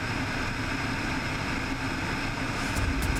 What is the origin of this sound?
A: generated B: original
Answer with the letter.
B